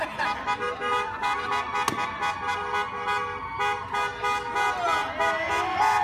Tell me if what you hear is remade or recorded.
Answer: recorded